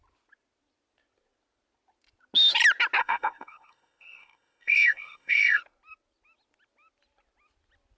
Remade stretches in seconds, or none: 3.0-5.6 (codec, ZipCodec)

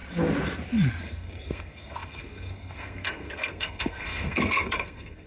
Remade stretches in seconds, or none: 1.0-5.3 (codec, SNAC)